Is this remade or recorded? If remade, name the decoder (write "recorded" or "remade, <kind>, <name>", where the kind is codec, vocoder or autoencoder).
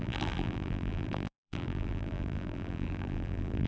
remade, vocoder, BigVGAN v2